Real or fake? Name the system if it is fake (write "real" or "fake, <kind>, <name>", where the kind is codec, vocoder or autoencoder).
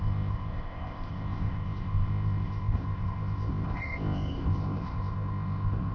fake, codec, ZipCodec